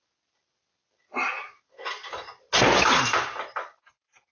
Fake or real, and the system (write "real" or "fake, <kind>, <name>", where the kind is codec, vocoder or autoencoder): real